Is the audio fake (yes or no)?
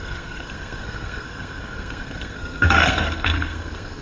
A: yes